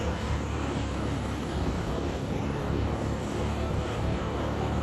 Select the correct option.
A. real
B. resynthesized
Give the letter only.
B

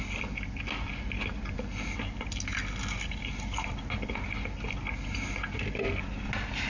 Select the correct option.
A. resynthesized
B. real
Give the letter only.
B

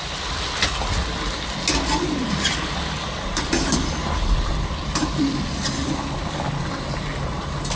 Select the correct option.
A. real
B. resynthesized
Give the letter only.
A